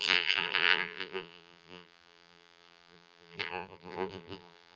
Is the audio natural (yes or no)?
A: no